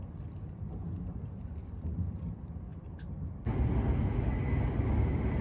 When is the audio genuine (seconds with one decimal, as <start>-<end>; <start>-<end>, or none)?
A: 0.0-5.4